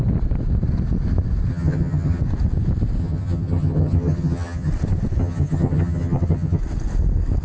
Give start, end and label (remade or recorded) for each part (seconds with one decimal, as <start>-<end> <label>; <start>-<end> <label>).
0.0-1.5 recorded; 1.5-2.2 remade; 2.2-3.0 recorded; 3.0-4.7 remade; 4.7-5.2 recorded; 5.2-6.6 remade; 6.6-7.4 recorded